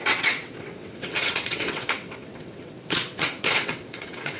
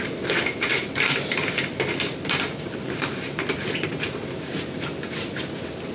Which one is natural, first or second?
second